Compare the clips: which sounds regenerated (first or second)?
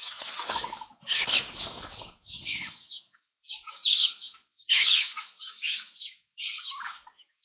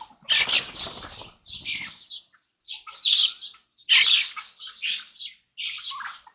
first